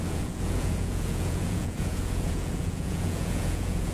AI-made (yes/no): yes